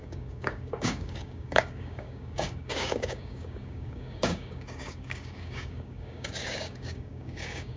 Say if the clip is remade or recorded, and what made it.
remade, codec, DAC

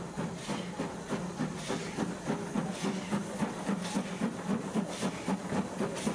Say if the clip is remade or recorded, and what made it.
recorded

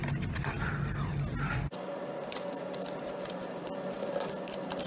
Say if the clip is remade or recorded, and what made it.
recorded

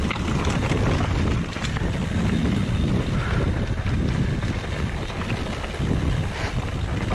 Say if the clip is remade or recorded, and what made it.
recorded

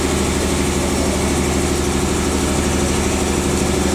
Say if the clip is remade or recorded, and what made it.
recorded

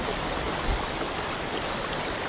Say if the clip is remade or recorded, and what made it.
remade, vocoder, BigVGAN v2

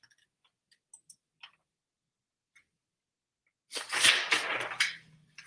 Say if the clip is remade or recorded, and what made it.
recorded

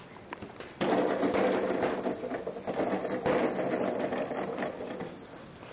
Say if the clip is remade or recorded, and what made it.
recorded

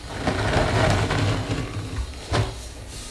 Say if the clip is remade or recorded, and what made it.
recorded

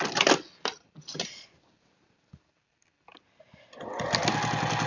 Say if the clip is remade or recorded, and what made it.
recorded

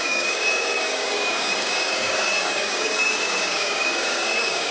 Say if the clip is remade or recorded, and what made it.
remade, codec, DAC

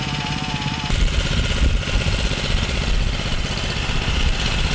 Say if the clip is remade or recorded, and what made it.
recorded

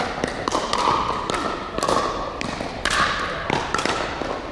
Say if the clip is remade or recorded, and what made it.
remade, vocoder, BigVGAN v2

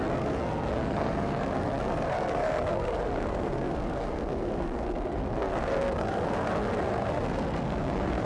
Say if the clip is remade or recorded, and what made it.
remade, codec, SNAC